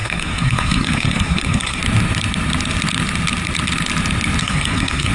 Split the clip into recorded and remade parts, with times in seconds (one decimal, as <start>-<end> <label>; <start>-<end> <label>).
0.0-1.8 remade; 1.8-4.4 recorded; 4.4-5.1 remade